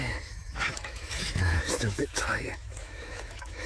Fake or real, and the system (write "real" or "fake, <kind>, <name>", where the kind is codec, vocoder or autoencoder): fake, autoencoder, DAC-VAE